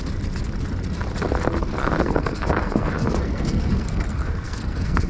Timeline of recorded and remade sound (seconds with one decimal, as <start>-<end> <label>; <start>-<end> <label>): 0.0-1.8 recorded; 1.8-5.1 remade